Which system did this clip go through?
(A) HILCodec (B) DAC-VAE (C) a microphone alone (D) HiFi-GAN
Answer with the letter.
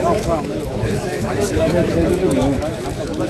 B